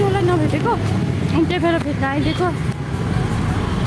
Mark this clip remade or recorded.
recorded